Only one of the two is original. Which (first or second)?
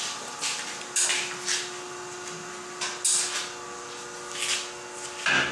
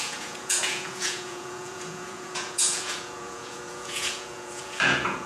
first